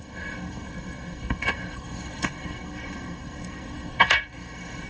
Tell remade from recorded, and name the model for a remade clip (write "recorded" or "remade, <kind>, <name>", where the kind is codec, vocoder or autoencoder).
remade, codec, SNAC